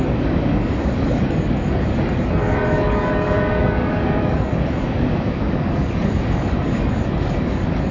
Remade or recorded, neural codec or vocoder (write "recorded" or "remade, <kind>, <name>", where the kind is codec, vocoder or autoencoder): remade, codec, DAC